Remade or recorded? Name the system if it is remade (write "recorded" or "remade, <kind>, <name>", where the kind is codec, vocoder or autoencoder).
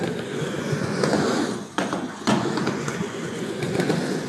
remade, vocoder, Vocos